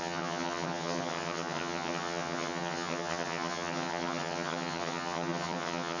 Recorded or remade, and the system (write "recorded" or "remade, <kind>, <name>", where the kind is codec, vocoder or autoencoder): remade, vocoder, HiFi-GAN